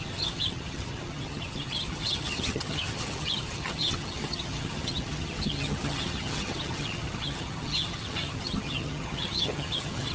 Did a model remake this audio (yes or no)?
yes